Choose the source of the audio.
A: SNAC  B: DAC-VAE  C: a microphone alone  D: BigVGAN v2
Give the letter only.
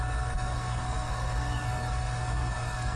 A